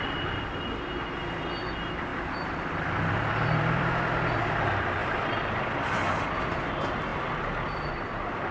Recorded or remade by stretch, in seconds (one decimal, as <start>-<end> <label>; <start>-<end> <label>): 0.0-8.5 remade